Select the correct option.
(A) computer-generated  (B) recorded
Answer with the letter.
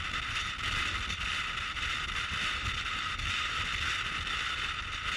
B